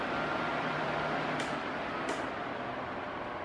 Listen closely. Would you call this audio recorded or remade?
recorded